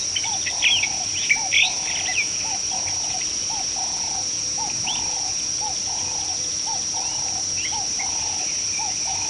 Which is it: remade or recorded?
recorded